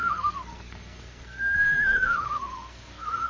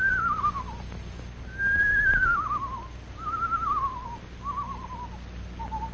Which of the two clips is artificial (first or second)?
first